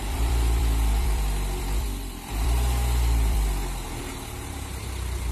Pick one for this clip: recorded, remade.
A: remade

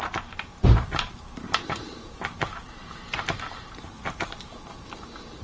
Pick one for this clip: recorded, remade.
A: remade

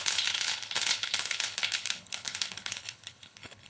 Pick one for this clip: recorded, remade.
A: remade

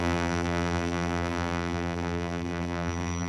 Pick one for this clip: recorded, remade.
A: remade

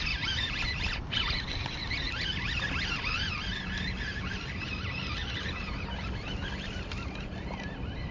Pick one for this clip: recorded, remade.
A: recorded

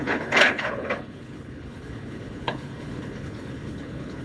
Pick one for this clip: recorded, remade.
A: remade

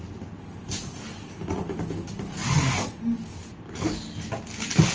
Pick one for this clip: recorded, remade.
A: recorded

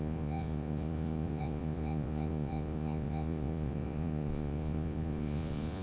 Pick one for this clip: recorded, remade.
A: remade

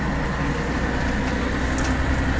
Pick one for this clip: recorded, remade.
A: recorded